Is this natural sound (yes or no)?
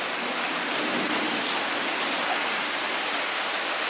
yes